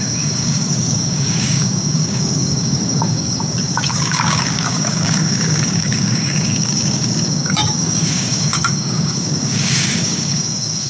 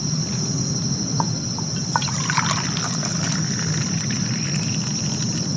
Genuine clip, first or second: second